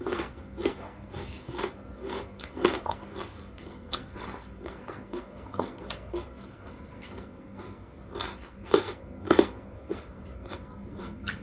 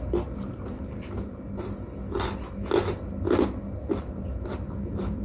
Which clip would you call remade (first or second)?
first